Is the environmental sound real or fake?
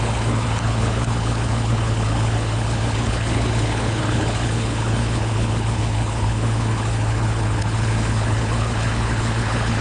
fake